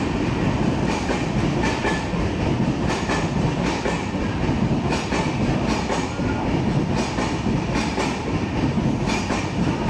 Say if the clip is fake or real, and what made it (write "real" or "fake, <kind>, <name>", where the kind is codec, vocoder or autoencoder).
real